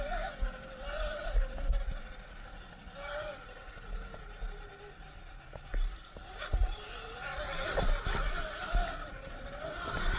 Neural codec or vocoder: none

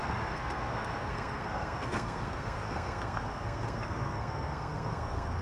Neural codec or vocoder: codec, SNAC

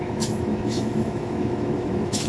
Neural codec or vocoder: autoencoder, DAC-VAE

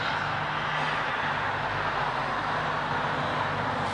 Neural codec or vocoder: none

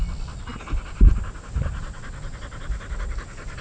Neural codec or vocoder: none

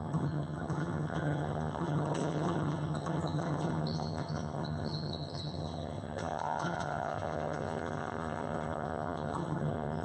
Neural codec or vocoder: vocoder, HiFi-GAN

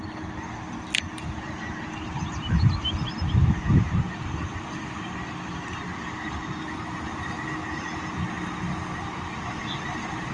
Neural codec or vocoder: none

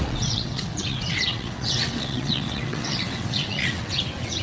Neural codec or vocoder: vocoder, WaveNeXt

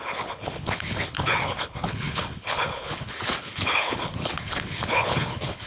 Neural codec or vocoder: codec, HILCodec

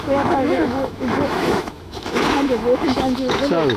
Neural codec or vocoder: autoencoder, DAC-VAE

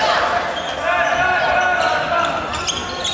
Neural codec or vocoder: none